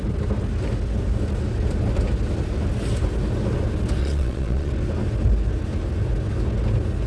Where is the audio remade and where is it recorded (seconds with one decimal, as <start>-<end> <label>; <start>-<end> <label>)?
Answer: 0.0-4.0 recorded; 4.0-4.7 remade; 4.7-7.1 recorded